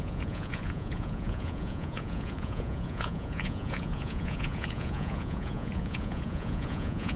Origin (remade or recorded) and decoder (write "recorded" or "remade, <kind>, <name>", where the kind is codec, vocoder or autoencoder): remade, vocoder, Vocos